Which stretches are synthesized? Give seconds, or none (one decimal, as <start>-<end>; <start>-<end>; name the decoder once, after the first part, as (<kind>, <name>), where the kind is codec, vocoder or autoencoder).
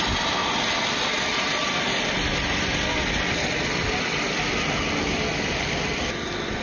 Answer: none